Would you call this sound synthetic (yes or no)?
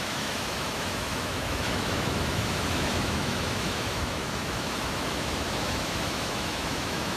yes